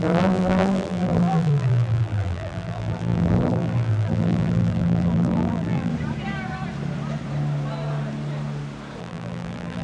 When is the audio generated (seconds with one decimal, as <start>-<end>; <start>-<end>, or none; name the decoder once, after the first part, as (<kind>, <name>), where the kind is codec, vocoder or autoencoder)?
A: 0.0-5.9 (vocoder, BigVGAN v2); 9.0-9.8